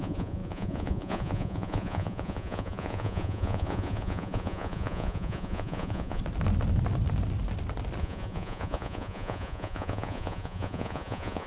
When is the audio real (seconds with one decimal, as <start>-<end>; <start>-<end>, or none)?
6.2-8.0